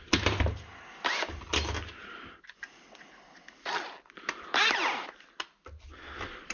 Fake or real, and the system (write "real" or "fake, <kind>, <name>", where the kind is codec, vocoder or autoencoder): real